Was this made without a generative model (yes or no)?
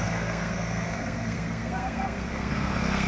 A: no